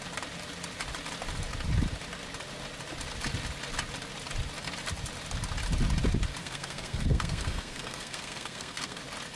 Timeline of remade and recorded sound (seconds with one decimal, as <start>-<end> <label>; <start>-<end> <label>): 0.0-6.4 recorded; 6.4-9.0 remade; 9.0-9.4 recorded